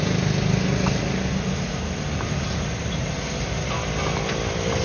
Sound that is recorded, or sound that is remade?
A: recorded